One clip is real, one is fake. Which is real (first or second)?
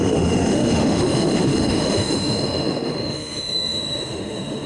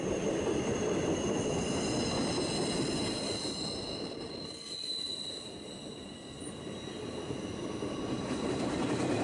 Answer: second